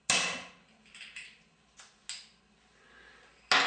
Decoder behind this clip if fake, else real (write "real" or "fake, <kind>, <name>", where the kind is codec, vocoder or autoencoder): real